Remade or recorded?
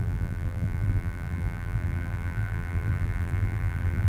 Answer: remade